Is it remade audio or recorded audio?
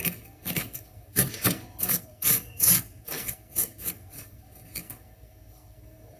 remade